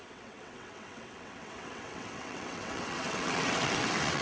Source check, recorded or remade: remade